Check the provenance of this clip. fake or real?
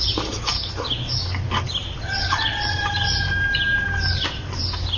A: real